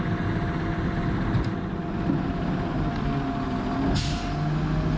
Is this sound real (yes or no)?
yes